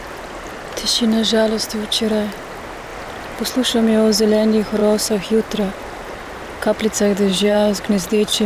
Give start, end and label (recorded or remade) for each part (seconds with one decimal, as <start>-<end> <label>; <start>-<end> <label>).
0.0-7.3 recorded; 7.3-8.5 remade

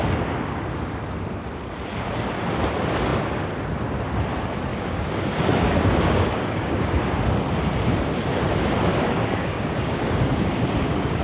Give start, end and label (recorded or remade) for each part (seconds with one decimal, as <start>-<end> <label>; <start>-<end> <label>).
0.0-4.7 recorded; 4.7-6.9 remade; 6.9-8.9 recorded; 8.9-11.2 remade

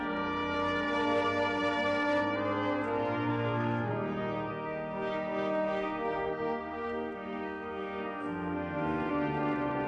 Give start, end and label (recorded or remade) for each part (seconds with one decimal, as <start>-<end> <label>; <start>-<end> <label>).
0.0-3.3 recorded; 3.3-3.9 remade; 3.9-4.5 recorded; 4.5-9.1 remade; 9.1-9.9 recorded

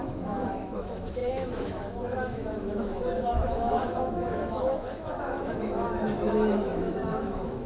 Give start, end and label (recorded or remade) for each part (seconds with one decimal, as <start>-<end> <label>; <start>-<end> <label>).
0.0-7.7 remade

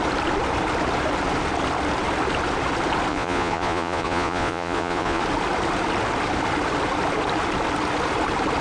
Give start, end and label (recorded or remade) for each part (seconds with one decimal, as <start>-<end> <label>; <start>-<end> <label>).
0.0-3.1 recorded; 3.1-5.2 remade; 5.2-8.6 recorded

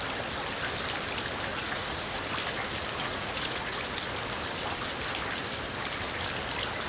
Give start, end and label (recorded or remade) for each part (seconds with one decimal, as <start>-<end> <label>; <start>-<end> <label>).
0.0-1.5 recorded; 1.5-2.2 remade; 2.2-3.0 recorded; 3.0-3.8 remade; 3.8-6.9 recorded